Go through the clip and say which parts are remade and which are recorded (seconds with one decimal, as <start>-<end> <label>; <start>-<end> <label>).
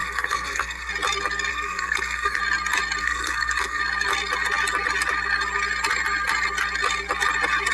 0.0-0.9 remade; 0.9-1.5 recorded; 1.5-2.4 remade; 2.4-3.0 recorded; 3.0-3.8 remade; 3.8-7.7 recorded